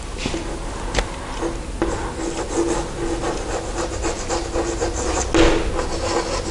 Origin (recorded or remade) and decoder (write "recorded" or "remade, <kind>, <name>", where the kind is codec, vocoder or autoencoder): recorded